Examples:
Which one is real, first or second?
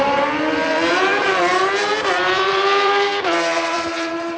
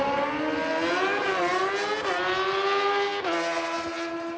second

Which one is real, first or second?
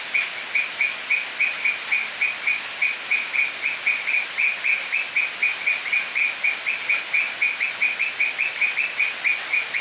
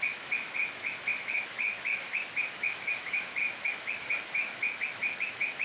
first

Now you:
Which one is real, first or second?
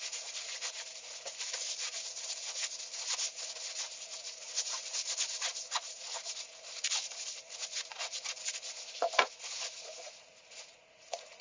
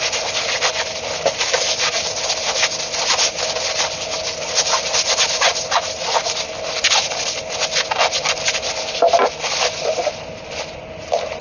second